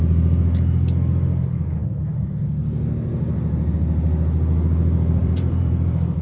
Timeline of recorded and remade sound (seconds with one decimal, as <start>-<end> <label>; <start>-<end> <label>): 0.0-5.2 recorded; 5.2-6.2 remade